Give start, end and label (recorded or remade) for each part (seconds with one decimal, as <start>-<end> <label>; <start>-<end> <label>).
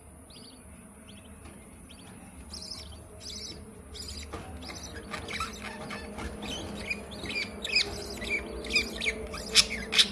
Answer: 0.0-10.1 recorded